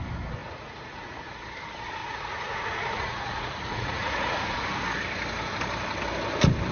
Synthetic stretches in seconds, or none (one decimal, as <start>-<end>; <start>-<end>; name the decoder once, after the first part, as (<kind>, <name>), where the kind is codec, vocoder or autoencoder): 0.4-1.3 (vocoder, Vocos); 2.0-4.8